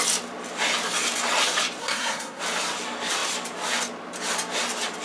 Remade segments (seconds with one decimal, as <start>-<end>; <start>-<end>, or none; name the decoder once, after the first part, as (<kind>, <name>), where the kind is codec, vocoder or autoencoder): 1.8-2.4 (codec, SNAC)